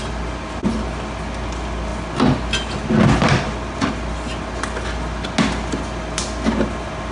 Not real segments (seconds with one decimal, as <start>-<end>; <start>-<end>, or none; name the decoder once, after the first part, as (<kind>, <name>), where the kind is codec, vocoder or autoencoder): none